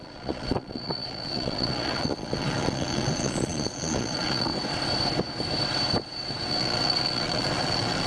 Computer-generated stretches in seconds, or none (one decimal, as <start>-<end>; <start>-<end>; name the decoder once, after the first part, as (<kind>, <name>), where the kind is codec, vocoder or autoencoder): 0.0-4.5 (vocoder, Vocos); 6.5-8.1